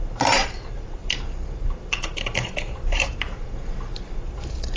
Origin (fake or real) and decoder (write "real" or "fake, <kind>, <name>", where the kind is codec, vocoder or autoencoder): fake, vocoder, BigVGAN v2